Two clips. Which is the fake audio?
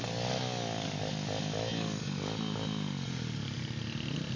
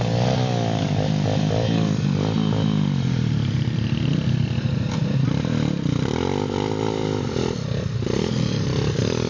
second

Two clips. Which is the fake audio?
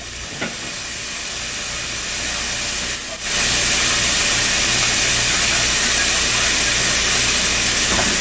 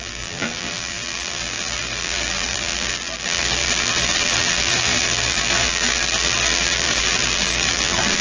second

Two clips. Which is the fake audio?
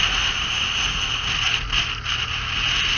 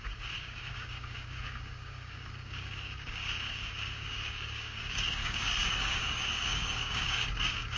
second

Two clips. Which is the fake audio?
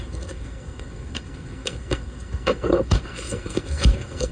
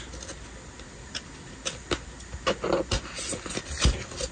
first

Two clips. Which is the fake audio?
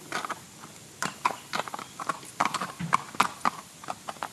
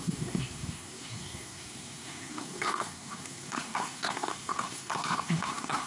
second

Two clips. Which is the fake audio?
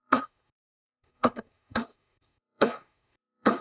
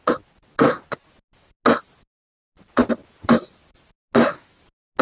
first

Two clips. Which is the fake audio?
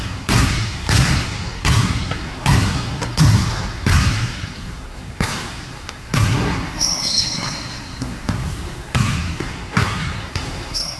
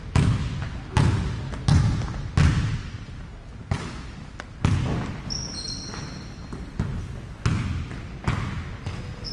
first